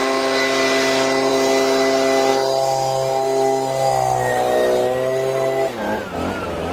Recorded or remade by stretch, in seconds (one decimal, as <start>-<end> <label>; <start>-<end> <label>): 0.0-6.7 recorded